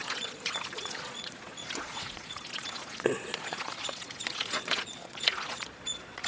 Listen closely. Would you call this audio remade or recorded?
remade